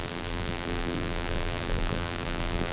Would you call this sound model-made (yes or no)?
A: yes